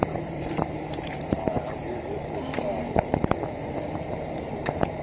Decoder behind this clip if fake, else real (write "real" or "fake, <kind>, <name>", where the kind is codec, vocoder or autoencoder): fake, vocoder, BigVGAN v2